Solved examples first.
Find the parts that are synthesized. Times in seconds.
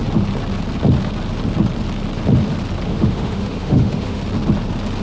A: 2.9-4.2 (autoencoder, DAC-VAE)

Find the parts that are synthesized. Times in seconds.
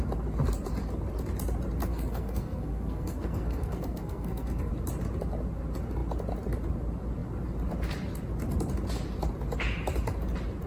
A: 1.8-4.7 (codec, SNAC)